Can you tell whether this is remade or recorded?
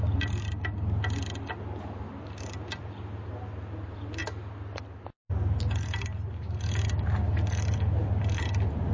recorded